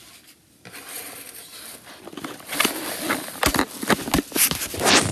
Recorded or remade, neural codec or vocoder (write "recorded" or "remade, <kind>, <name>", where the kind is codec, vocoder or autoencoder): recorded